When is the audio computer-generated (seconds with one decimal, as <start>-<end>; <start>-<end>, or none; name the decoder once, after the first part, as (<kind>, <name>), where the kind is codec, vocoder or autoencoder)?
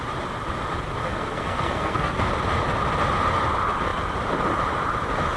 1.0-2.3 (codec, SNAC)